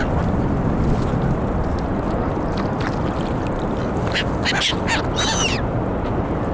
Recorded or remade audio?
recorded